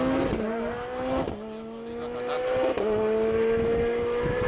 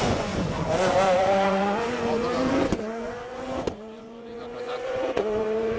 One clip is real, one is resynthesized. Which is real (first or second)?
first